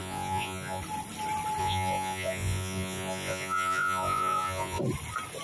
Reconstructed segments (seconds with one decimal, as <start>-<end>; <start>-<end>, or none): 0.0-0.8; 1.6-4.8